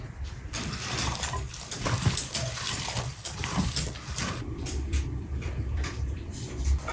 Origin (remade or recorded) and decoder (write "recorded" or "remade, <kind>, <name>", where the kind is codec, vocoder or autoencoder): remade, vocoder, BigVGAN v2